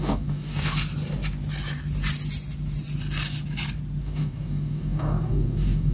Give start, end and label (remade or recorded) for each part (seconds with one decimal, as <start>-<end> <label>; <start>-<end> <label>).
0.0-0.7 remade; 0.7-4.0 recorded; 4.0-5.9 remade